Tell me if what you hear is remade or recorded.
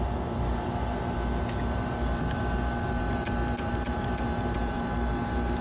remade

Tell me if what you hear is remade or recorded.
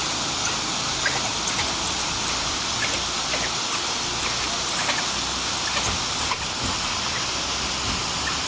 recorded